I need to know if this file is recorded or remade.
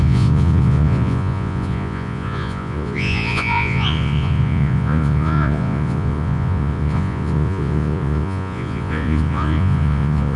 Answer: remade